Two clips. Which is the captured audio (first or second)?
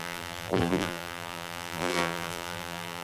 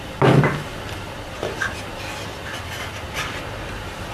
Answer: second